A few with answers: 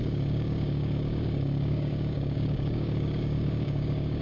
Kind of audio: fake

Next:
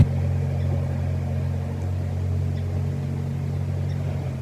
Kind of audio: real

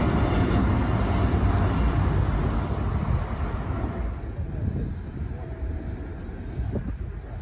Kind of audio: real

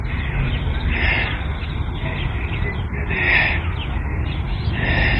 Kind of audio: real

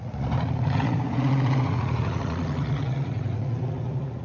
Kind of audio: fake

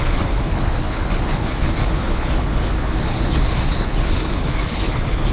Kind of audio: fake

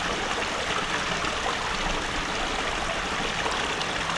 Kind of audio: real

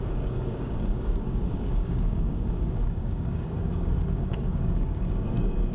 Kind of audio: fake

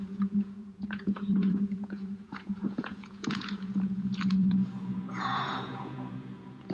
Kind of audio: fake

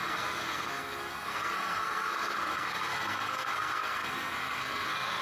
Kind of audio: fake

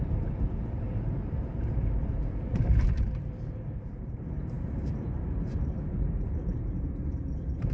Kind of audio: fake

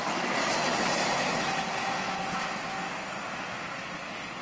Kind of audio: real